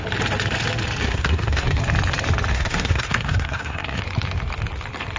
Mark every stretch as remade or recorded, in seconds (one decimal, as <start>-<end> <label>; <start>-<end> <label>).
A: 0.0-1.0 recorded; 1.0-1.8 remade; 1.8-2.5 recorded; 2.5-4.0 remade; 4.0-5.2 recorded